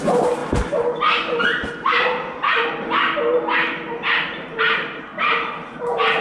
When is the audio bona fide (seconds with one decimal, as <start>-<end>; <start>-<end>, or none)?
0.0-6.2